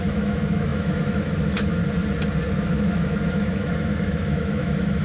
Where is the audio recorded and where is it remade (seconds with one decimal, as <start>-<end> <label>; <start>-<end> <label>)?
0.0-1.8 remade; 1.8-2.6 recorded; 2.6-5.0 remade